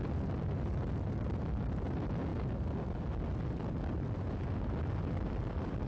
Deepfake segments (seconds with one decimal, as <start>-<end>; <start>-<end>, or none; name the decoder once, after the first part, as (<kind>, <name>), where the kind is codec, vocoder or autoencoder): none